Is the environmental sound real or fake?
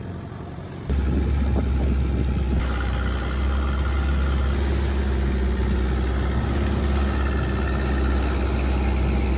real